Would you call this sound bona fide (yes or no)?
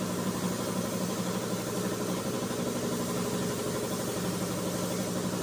yes